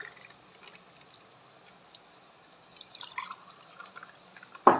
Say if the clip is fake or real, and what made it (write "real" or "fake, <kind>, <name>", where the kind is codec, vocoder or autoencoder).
real